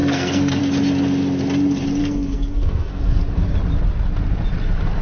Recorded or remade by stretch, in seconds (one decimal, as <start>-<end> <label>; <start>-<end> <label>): 0.0-0.6 remade; 0.6-2.0 recorded; 2.0-3.2 remade; 3.2-5.0 recorded